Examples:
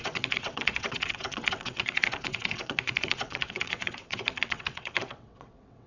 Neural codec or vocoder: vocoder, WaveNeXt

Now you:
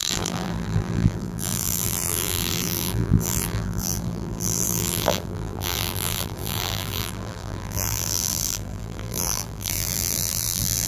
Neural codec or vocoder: vocoder, BigVGAN v2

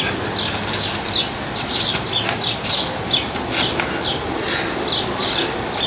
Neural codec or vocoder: none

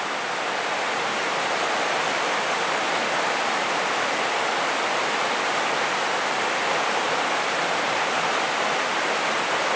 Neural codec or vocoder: none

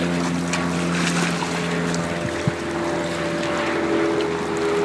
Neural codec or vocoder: none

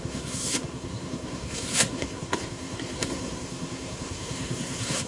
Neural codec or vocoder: codec, SNAC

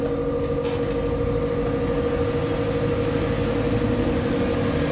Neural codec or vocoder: none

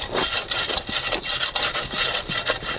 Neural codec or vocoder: none